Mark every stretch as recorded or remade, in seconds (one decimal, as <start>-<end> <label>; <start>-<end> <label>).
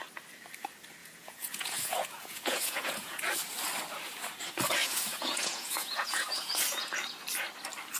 0.0-1.0 recorded; 1.0-3.4 remade; 3.4-4.8 recorded; 4.8-6.9 remade; 6.9-8.0 recorded